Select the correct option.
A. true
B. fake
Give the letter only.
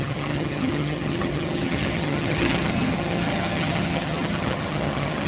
B